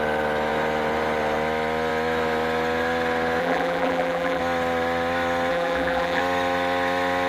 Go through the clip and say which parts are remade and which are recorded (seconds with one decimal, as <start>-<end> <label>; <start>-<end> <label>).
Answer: 0.0-3.4 recorded; 3.4-4.4 remade; 4.4-5.5 recorded; 5.5-6.2 remade; 6.2-7.3 recorded